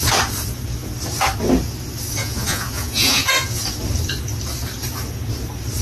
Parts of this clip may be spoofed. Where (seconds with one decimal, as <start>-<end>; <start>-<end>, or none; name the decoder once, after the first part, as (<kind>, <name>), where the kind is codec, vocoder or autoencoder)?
2.2-3.6 (vocoder, Vocos)